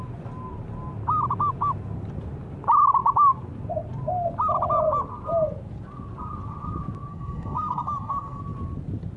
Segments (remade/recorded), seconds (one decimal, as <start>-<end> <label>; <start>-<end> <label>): 0.0-7.1 recorded; 7.1-8.4 remade; 8.4-9.2 recorded